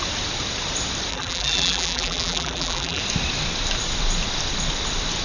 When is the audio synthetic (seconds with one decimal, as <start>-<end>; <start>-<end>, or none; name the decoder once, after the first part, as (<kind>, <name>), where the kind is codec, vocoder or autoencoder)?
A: 1.1-3.0 (vocoder, BigVGAN v2)